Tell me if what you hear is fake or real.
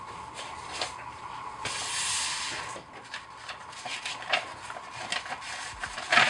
real